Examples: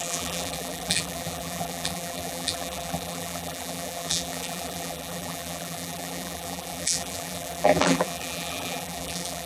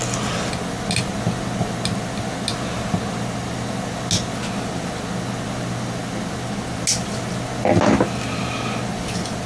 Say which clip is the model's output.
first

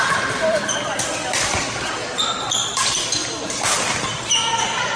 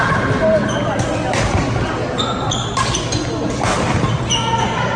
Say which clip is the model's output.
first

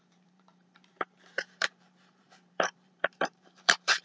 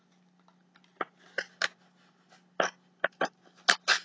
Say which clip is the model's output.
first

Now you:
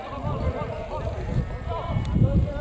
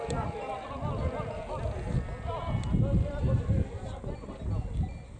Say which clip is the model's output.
first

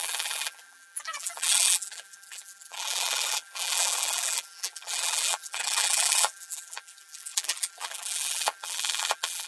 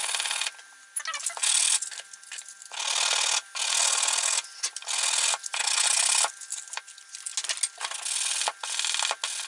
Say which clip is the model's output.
first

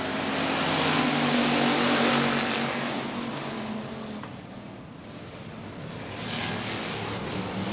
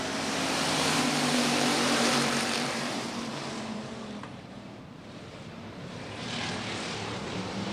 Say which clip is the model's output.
second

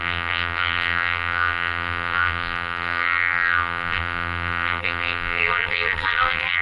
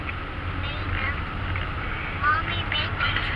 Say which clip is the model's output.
first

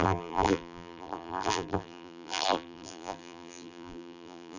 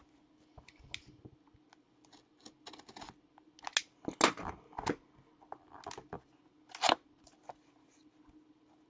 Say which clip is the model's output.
first